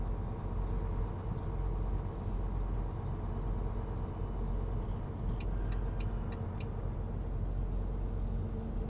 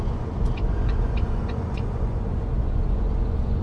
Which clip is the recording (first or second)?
first